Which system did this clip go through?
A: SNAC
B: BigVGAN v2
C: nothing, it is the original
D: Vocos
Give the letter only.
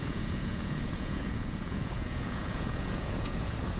D